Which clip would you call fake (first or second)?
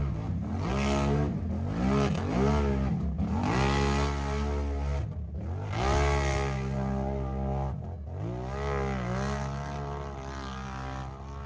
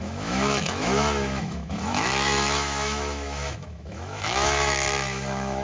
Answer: second